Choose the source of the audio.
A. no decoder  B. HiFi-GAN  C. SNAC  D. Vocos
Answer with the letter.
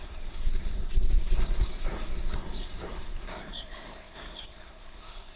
C